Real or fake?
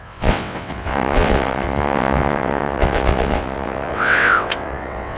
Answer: fake